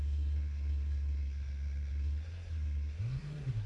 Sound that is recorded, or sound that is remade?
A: remade